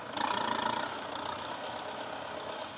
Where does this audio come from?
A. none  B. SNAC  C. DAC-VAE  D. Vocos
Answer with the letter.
A